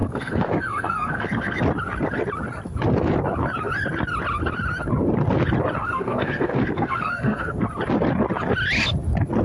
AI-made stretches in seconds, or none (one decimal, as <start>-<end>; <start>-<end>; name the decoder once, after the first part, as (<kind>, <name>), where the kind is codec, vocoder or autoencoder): 0.0-1.6 (codec, SNAC); 5.8-7.6